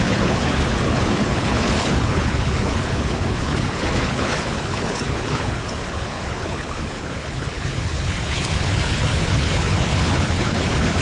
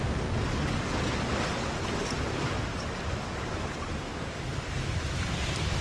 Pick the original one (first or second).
second